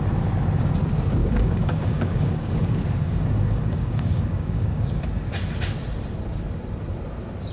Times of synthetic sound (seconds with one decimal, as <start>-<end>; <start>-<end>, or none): 1.2-5.0